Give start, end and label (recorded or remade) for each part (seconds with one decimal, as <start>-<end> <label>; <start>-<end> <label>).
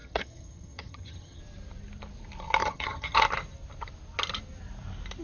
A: 0.0-1.4 remade; 1.4-2.6 recorded; 2.6-3.2 remade; 3.2-5.2 recorded